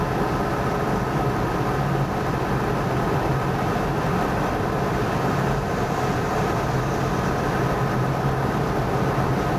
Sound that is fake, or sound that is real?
real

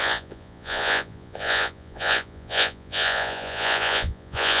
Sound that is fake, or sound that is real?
fake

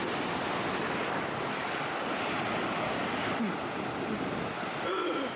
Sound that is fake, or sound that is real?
real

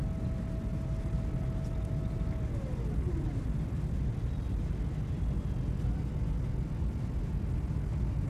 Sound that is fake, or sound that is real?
real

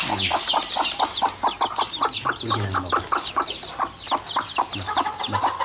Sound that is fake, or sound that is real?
real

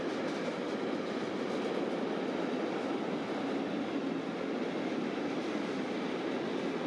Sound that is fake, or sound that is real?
real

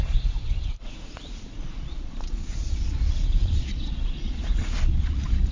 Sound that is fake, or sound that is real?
fake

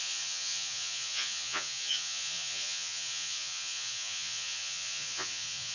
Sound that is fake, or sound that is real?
fake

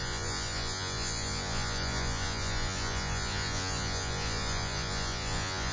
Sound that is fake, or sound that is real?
fake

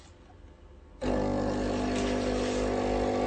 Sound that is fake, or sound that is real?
real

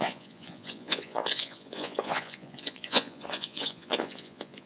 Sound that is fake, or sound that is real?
fake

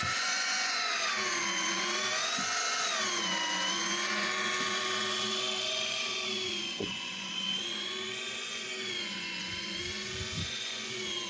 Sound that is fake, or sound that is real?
fake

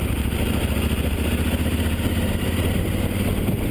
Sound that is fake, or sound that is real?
real